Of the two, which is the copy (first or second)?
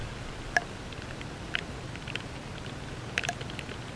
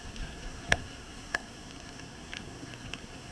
second